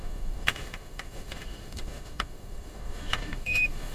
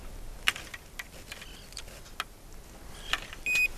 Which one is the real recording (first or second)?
second